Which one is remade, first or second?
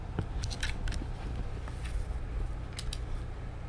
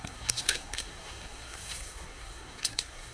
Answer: second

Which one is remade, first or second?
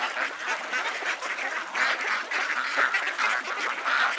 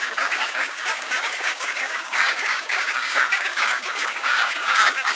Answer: second